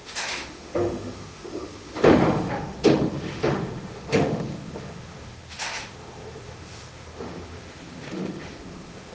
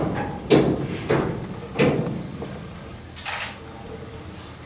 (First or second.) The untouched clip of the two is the second